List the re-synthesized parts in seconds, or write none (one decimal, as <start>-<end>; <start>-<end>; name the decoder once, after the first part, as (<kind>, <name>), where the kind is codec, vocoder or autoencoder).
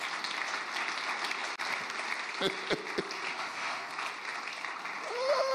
3.3-3.9 (autoencoder, DAC-VAE)